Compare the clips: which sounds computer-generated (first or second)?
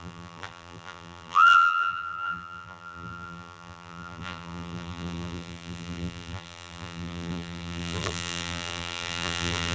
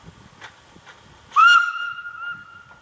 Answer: first